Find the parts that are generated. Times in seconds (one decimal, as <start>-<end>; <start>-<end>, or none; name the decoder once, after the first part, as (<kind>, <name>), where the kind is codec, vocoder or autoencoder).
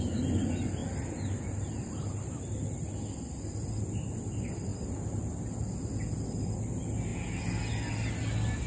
none